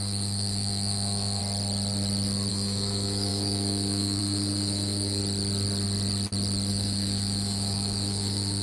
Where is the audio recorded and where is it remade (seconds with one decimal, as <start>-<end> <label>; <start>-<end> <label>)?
0.0-1.4 remade; 1.4-2.5 recorded; 2.5-5.2 remade; 5.2-6.7 recorded; 6.7-8.6 remade